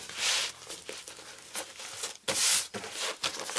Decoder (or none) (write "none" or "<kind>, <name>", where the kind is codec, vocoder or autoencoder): none